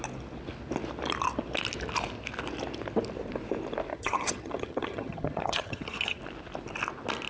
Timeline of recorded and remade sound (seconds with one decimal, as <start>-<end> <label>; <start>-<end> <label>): 0.0-3.9 recorded; 3.9-6.2 remade; 6.2-7.3 recorded